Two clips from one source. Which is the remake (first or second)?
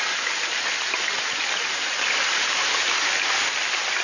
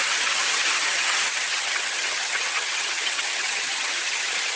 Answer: second